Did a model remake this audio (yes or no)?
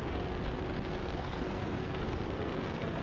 yes